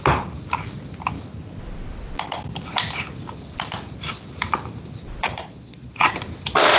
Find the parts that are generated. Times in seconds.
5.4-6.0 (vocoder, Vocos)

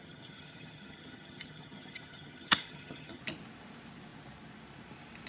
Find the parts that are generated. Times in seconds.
0.0-3.2 (vocoder, HiFi-GAN)